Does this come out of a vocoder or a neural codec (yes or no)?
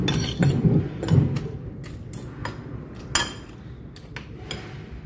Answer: no